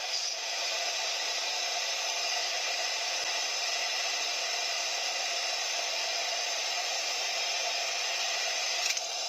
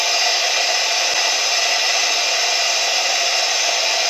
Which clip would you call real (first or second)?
second